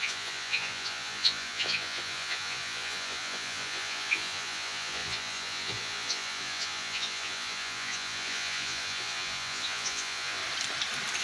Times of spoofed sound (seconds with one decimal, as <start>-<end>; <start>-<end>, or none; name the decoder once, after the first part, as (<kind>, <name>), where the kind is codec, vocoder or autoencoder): 0.0-10.4 (vocoder, Vocos)